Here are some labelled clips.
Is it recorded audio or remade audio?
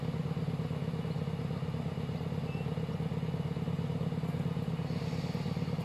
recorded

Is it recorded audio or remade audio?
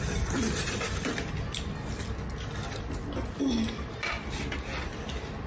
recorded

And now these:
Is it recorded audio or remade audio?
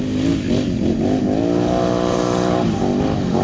recorded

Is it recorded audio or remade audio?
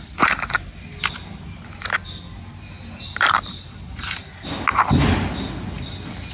recorded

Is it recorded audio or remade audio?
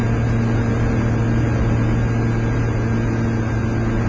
recorded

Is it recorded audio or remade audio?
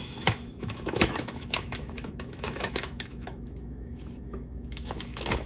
remade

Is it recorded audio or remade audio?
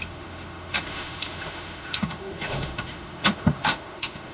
remade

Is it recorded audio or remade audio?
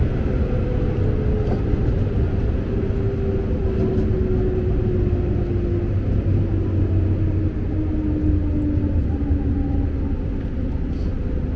recorded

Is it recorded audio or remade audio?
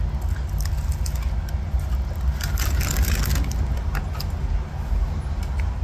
recorded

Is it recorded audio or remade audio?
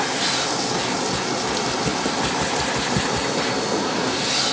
recorded